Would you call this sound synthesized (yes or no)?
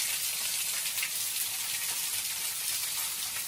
no